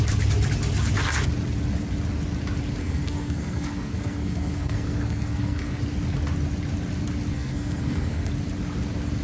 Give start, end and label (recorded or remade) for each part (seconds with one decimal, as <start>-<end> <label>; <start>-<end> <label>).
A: 0.0-2.8 recorded; 2.8-5.8 remade; 5.8-7.3 recorded; 7.3-8.3 remade; 8.3-9.2 recorded